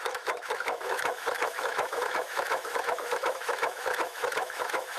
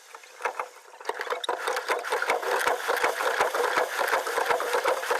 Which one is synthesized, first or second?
first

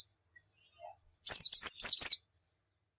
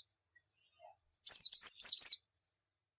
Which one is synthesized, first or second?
second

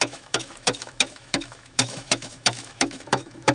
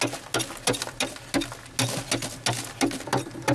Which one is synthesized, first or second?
first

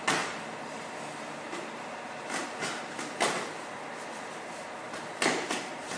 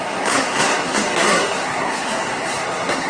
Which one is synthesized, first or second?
second